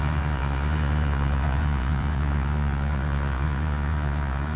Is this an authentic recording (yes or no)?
no